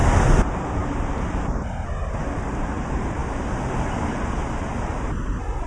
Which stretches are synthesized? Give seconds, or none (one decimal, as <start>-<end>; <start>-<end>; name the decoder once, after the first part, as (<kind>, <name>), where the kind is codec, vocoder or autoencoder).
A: none